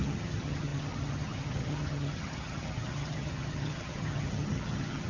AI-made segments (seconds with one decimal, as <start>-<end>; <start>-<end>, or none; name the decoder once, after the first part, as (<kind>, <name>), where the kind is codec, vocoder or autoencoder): 0.0-5.1 (vocoder, HiFi-GAN)